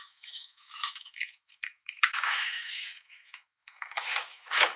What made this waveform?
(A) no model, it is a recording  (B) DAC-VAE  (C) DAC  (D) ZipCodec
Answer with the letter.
B